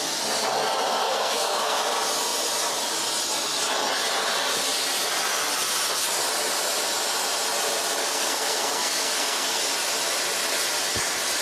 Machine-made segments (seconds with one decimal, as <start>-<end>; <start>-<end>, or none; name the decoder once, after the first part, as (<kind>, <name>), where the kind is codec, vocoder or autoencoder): 1.0-1.8 (codec, SNAC); 8.0-9.6